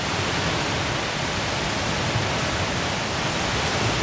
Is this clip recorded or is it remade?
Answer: recorded